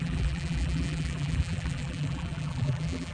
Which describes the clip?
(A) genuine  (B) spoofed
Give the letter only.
B